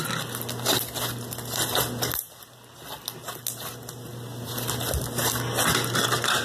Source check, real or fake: real